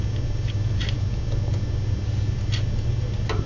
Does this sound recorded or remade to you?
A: recorded